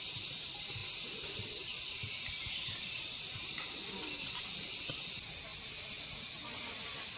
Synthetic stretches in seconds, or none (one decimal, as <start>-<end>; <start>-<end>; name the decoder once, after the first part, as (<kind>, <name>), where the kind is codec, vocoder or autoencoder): none